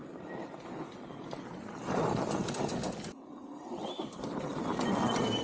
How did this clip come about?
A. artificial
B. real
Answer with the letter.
B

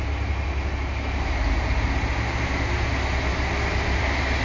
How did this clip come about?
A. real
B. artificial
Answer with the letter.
A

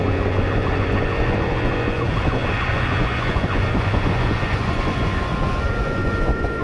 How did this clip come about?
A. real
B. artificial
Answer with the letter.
B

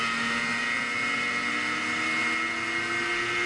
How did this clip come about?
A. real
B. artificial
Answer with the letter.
A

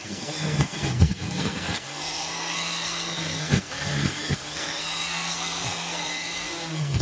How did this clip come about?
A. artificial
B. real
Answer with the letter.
A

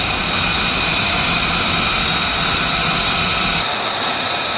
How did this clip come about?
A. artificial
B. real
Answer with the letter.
B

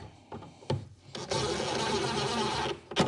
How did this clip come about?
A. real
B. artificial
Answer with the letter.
A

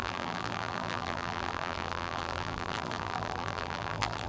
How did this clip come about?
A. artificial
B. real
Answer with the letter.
A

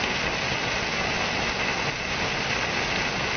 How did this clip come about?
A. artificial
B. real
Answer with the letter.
B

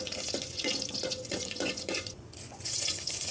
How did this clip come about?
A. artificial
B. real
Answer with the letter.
A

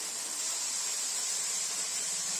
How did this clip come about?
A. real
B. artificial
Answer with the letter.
A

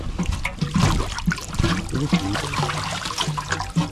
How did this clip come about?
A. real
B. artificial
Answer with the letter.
A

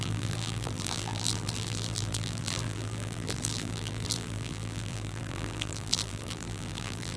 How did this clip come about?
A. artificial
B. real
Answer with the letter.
A